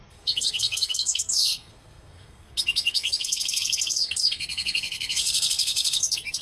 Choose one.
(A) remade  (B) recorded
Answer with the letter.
A